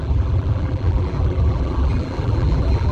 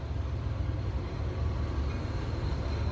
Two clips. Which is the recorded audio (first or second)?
second